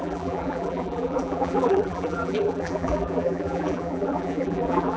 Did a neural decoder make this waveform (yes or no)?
yes